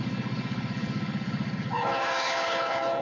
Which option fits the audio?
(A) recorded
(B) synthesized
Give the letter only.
B